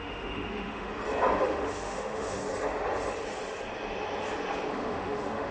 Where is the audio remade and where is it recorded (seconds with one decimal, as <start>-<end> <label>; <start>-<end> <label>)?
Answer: 0.0-0.9 remade; 0.9-1.4 recorded; 1.4-2.4 remade; 2.4-4.7 recorded; 4.7-5.5 remade